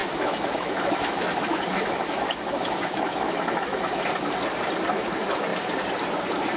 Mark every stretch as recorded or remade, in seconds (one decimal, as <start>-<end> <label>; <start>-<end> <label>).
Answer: 0.0-4.0 remade; 4.0-6.6 recorded